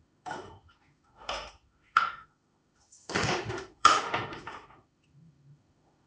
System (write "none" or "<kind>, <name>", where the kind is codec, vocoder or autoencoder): autoencoder, DAC-VAE